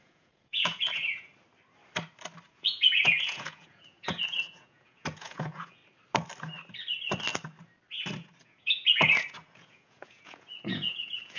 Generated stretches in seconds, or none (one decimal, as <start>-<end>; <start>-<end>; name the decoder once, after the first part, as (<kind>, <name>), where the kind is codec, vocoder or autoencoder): 0.0-1.3 (vocoder, Vocos); 2.5-5.8; 8.4-11.4